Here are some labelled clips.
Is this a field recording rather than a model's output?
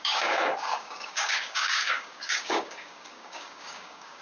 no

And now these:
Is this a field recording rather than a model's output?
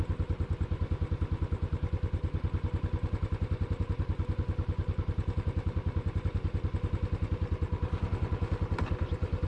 yes